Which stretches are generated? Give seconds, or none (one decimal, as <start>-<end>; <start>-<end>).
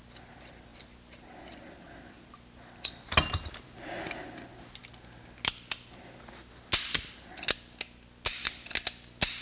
none